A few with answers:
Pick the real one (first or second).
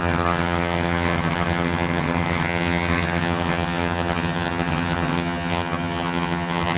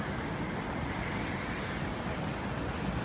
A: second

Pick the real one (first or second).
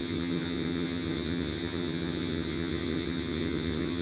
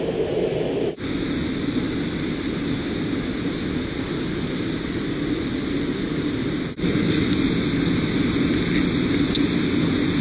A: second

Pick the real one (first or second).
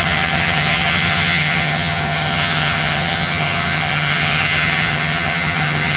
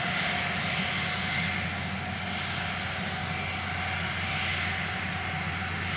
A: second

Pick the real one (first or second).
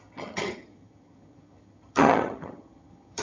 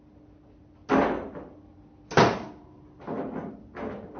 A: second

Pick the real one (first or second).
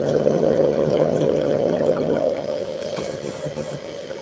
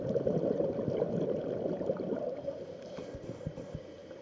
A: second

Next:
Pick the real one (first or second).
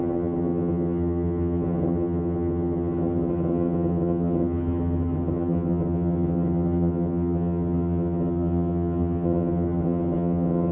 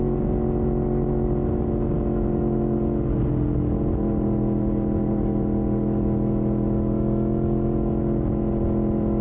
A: second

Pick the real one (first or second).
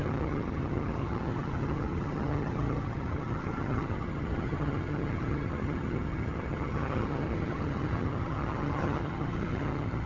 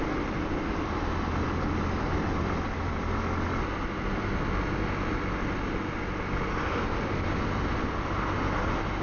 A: second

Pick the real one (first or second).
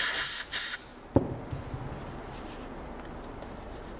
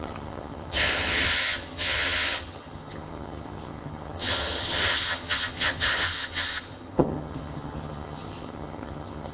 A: first